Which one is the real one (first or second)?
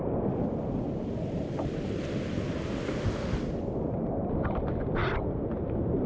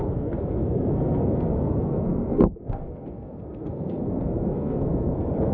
first